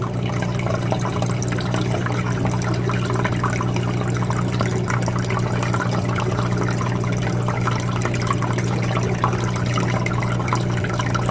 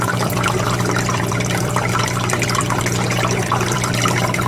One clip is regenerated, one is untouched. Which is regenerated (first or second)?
second